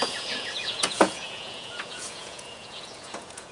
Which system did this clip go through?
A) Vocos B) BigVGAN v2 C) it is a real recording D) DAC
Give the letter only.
A